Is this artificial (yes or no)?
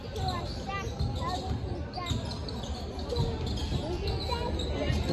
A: no